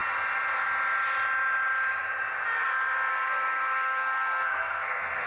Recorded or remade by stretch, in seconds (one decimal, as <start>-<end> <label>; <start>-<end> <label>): 0.0-3.1 recorded; 3.1-5.3 remade